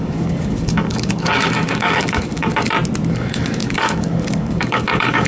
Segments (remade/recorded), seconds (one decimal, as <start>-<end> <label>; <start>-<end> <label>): 0.0-2.5 remade; 2.5-3.1 recorded; 3.1-5.3 remade